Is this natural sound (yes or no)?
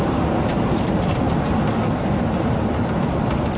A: yes